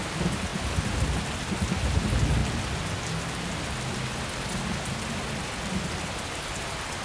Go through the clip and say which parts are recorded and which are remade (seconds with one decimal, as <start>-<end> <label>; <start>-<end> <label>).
0.0-7.0 recorded